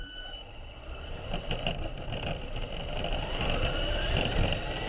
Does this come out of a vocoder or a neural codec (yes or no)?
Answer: no